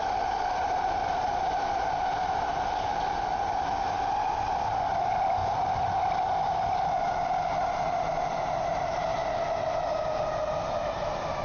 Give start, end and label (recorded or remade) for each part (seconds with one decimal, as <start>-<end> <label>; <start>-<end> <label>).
0.0-11.4 recorded